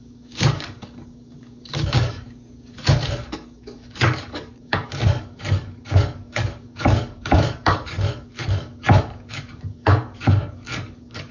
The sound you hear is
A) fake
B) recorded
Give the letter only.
A